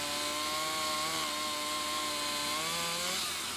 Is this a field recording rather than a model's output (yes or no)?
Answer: yes